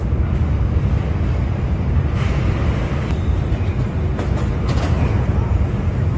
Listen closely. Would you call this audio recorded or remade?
recorded